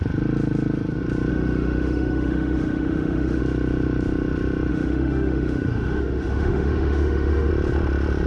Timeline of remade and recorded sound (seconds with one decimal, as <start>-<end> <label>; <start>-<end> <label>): 0.0-1.3 recorded; 1.3-3.4 remade; 3.4-4.7 recorded; 4.7-7.5 remade; 7.5-8.3 recorded